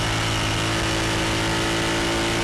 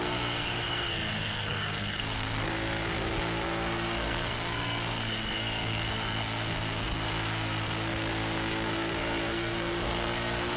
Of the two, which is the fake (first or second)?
second